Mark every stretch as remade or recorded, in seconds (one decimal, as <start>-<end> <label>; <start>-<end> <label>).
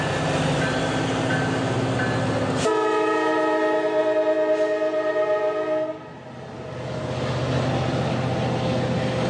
0.0-9.3 recorded